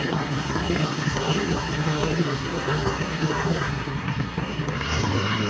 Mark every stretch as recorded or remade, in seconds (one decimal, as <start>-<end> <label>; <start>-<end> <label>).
0.0-5.5 remade